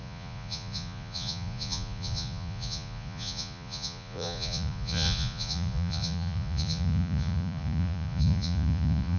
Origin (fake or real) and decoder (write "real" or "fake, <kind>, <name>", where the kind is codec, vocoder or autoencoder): fake, vocoder, Vocos